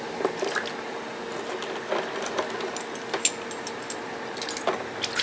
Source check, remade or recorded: recorded